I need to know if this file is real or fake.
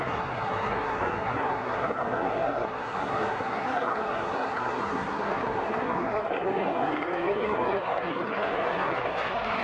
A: fake